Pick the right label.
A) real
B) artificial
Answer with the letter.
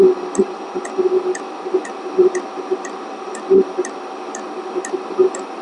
A